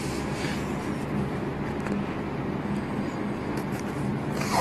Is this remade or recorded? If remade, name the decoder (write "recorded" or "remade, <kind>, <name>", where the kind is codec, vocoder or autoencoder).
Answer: recorded